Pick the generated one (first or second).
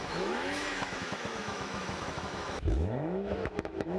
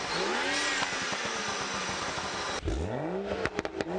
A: first